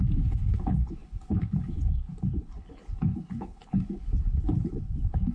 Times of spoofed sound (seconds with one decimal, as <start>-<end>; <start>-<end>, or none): 0.0-5.3